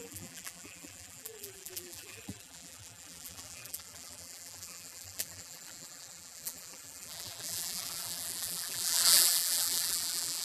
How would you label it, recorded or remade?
remade